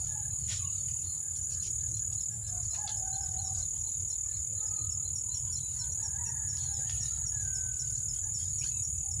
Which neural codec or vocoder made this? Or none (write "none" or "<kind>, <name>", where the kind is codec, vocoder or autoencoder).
none